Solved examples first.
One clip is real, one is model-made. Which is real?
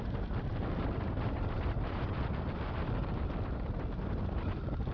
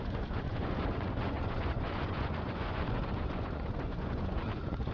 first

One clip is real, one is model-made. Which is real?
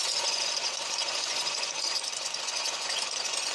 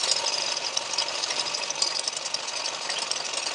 second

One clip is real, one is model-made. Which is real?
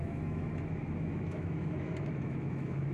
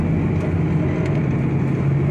second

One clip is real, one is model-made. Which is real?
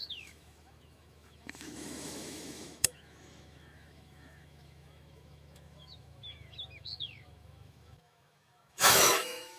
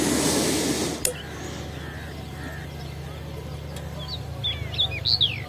second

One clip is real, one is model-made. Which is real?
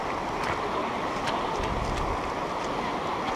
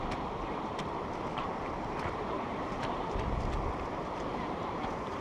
first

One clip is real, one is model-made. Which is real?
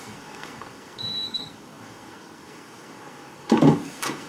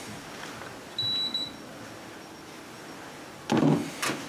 second